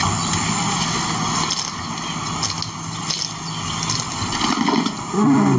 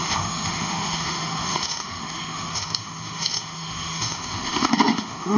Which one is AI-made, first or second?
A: second